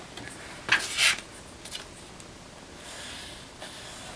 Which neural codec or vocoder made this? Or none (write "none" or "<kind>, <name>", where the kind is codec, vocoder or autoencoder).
none